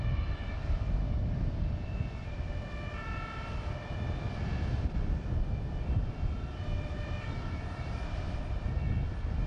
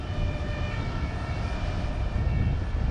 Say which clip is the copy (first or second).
first